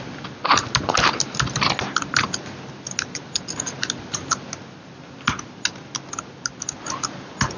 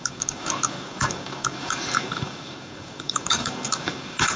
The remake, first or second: second